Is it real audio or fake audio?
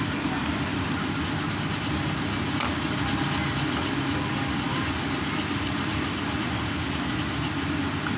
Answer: real